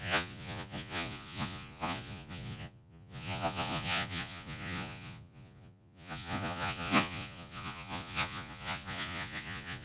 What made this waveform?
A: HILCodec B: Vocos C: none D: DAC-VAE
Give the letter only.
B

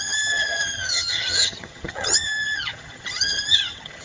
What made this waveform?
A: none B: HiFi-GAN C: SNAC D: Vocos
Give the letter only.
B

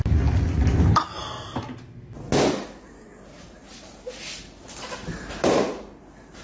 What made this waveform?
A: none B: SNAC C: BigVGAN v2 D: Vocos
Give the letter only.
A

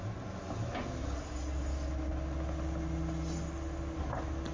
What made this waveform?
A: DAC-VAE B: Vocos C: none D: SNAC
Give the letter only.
C